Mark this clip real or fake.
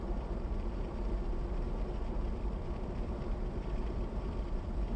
fake